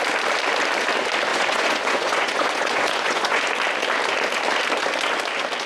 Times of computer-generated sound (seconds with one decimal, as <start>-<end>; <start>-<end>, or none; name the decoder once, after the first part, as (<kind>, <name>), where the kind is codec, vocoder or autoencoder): 1.3-3.4 (vocoder, Vocos)